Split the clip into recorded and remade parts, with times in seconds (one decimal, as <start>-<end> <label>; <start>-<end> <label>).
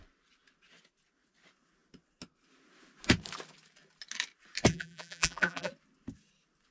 0.0-4.7 recorded; 4.7-5.7 remade; 5.7-6.7 recorded